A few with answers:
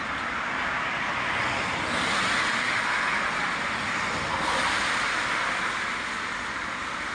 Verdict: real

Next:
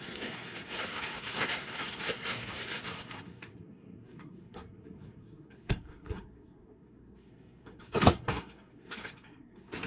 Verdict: fake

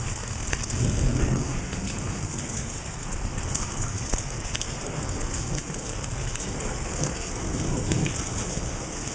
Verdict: fake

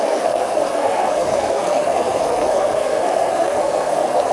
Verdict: fake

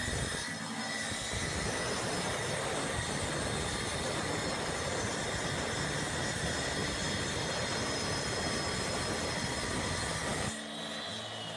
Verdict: real